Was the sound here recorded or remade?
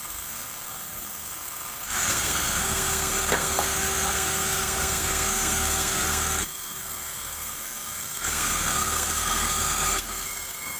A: remade